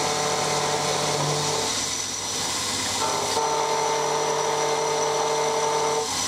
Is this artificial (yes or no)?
no